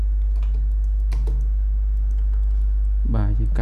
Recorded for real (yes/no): yes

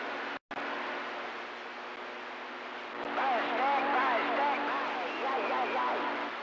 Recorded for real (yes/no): yes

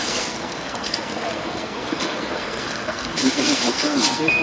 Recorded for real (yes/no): no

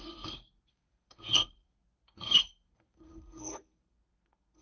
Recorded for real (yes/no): no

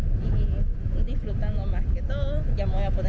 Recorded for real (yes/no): yes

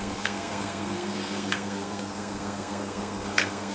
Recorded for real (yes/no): no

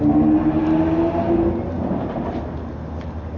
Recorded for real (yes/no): yes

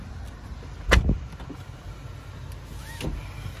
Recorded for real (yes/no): yes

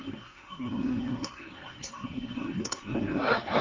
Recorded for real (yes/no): no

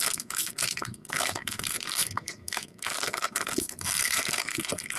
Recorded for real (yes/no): no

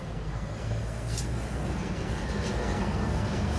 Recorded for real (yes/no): no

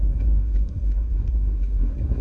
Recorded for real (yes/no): no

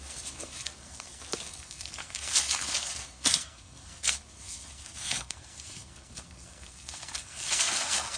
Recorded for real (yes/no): no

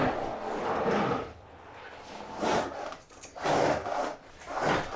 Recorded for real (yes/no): yes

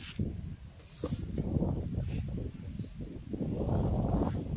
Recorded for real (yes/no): yes